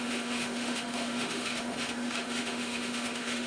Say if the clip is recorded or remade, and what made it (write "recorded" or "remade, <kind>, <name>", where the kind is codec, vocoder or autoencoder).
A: remade, autoencoder, DAC-VAE